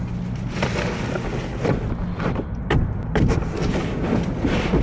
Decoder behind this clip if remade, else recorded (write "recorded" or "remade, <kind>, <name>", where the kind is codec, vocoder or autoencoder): recorded